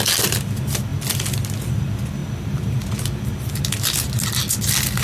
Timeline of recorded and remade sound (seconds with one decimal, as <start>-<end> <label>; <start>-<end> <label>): 0.0-5.0 recorded